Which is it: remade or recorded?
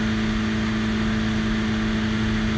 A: recorded